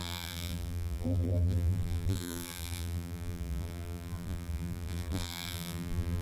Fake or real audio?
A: fake